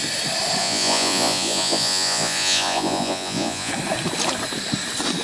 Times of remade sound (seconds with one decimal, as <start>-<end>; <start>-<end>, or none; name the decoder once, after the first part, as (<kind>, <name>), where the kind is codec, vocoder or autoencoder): 0.6-3.7 (vocoder, Vocos)